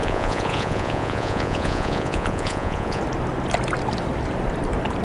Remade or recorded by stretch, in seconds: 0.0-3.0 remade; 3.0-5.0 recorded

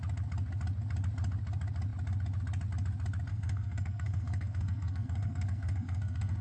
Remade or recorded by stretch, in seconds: 0.0-3.3 recorded; 3.3-6.4 remade

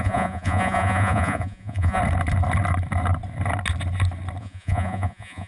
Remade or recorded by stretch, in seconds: 0.0-2.0 remade; 2.0-4.4 recorded; 4.4-5.5 remade

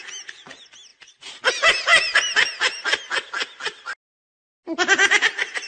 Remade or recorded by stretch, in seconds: 0.0-5.7 recorded